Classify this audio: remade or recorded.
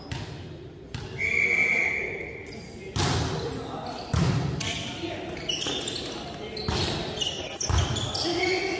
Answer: recorded